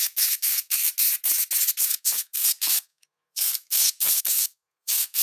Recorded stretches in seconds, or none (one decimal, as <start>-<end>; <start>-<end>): 0.9-1.8